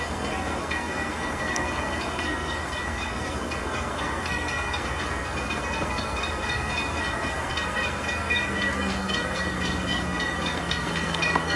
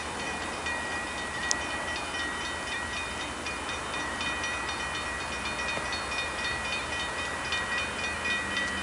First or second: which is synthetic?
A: first